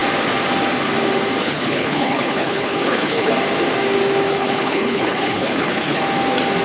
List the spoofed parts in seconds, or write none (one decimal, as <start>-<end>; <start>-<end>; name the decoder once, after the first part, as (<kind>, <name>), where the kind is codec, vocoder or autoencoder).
1.4-3.3 (codec, HILCodec); 4.3-6.0